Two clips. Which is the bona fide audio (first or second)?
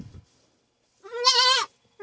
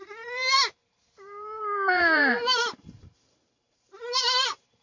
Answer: first